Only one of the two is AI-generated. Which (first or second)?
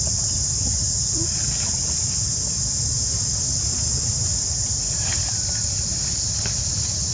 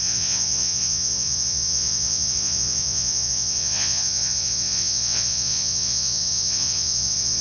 second